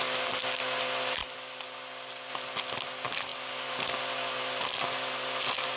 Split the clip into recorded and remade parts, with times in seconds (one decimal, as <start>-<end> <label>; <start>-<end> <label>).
0.0-5.8 recorded